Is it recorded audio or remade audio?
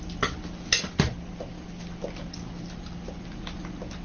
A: recorded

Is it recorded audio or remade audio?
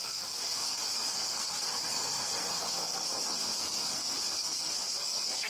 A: remade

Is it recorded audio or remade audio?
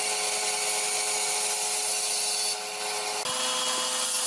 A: recorded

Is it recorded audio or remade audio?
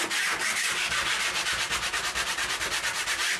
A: recorded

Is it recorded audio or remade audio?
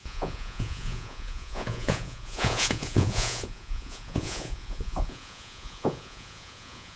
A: remade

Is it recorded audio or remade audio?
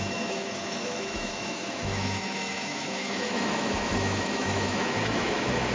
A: remade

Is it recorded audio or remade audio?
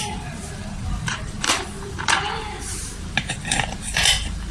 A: remade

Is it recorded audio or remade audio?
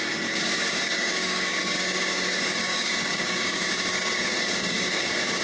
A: remade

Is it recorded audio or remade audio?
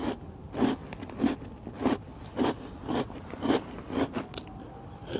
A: recorded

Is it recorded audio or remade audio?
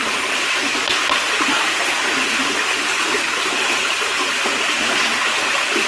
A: recorded